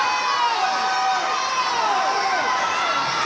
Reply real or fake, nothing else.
real